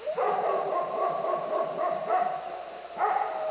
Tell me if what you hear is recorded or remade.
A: recorded